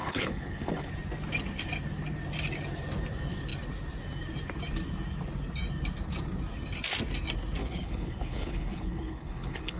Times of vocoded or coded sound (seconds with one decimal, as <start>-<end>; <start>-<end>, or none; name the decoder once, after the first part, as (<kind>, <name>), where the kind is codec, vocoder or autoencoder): 0.0-0.9 (codec, HILCodec); 7.6-9.8